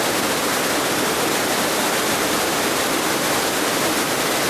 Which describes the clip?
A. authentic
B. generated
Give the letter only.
A